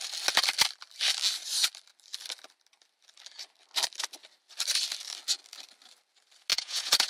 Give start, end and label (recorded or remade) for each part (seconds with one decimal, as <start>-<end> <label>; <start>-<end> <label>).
0.0-6.5 recorded; 6.5-7.1 remade